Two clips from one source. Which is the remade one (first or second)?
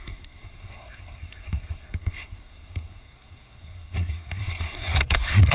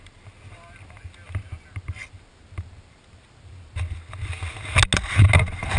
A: first